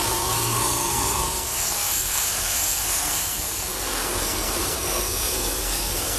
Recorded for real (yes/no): no